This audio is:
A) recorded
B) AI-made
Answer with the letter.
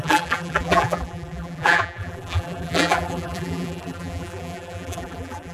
B